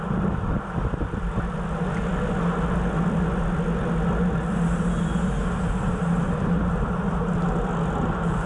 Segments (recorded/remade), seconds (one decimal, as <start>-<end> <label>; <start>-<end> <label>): 0.0-8.5 recorded